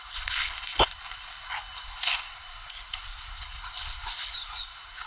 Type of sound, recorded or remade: remade